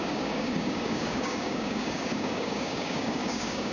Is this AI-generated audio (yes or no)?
yes